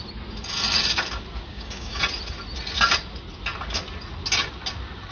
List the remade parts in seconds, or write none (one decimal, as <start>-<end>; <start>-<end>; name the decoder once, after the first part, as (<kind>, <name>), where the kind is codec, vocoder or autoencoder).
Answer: 1.5-2.0 (codec, DAC)